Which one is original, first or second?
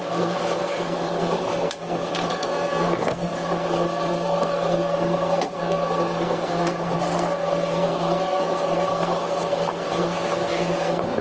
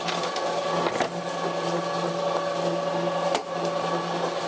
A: second